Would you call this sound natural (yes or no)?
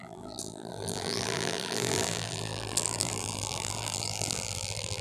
no